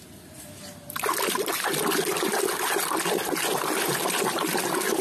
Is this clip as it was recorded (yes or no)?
yes